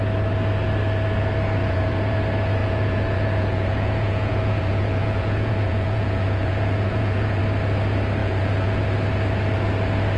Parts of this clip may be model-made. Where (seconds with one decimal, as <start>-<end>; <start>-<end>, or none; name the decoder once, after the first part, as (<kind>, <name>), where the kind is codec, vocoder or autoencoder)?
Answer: 1.6-2.1 (vocoder, Vocos); 2.6-7.4; 8.2-8.8